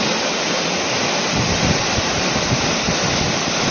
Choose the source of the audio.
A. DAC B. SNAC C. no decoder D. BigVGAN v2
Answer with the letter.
D